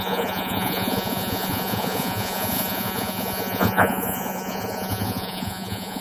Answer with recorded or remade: remade